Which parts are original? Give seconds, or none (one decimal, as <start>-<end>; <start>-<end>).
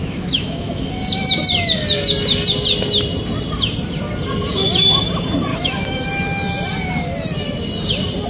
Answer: 0.9-5.5; 6.1-8.3